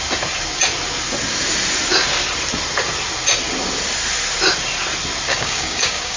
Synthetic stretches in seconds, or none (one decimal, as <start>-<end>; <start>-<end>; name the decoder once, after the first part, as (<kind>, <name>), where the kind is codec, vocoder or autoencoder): 5.3-6.2 (codec, DAC)